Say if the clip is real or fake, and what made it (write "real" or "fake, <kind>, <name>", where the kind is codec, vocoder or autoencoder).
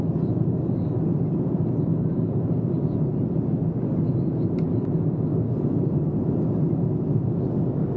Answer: real